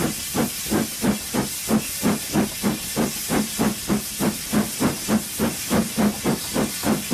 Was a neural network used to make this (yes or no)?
no